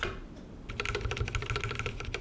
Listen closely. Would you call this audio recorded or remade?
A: recorded